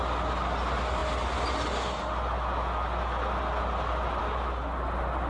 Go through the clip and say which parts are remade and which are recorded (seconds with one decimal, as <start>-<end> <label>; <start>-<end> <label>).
0.0-5.3 recorded